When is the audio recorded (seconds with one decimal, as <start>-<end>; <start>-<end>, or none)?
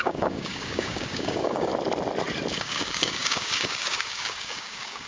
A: 1.7-2.5